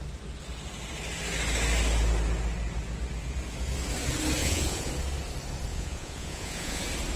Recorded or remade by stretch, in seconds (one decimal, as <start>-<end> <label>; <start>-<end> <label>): 0.0-4.4 recorded; 4.4-4.9 remade; 4.9-5.7 recorded; 5.7-6.8 remade; 6.8-7.2 recorded